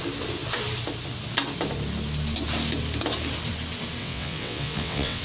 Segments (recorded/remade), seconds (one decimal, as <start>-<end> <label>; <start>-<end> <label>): 0.0-4.0 recorded; 4.0-5.2 remade